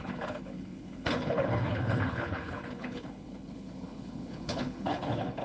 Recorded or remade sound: remade